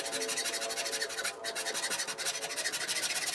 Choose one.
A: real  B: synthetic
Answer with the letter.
A